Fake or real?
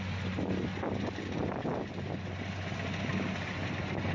real